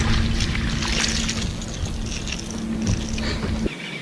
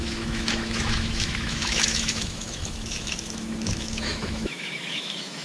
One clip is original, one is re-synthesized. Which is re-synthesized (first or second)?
second